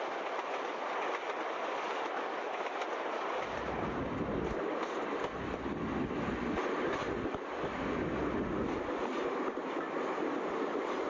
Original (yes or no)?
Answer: yes